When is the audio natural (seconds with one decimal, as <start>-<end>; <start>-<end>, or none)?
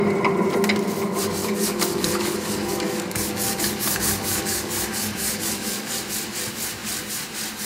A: 0.0-1.4; 6.0-7.7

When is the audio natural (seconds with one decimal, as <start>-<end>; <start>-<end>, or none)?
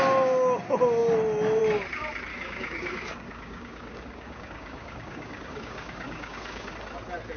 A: 0.0-2.3; 6.7-7.4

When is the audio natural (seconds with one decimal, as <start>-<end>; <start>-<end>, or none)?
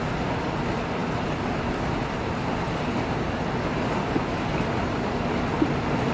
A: 0.0-6.1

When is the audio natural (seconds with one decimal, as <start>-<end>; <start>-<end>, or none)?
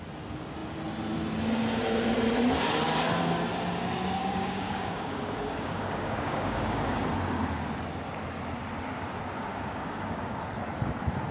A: 0.0-4.2; 7.1-9.5; 10.4-11.3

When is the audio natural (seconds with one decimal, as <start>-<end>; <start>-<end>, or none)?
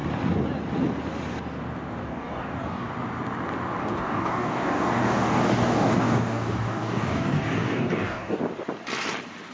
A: 0.0-2.1; 2.9-3.8; 8.4-9.5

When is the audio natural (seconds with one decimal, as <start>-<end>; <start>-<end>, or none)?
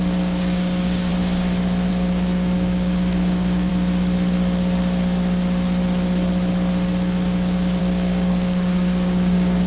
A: 1.1-1.9; 3.7-7.8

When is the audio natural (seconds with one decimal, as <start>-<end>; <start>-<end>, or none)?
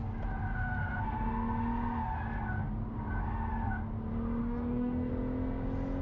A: 0.0-4.4; 5.1-6.0